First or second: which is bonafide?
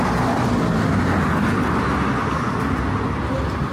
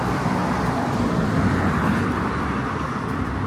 first